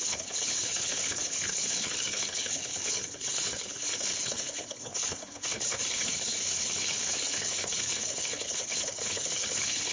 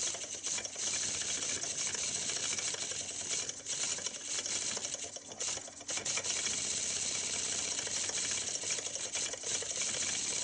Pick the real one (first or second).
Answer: second